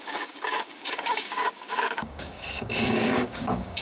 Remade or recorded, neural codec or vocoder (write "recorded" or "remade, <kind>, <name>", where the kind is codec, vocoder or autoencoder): remade, codec, DAC